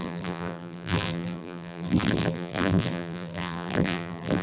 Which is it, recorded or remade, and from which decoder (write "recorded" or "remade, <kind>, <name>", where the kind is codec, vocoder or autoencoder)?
remade, vocoder, BigVGAN v2